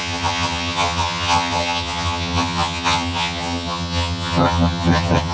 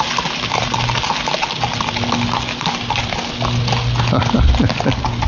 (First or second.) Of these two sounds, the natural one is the second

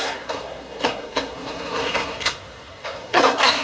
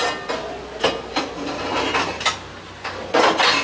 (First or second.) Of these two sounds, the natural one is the second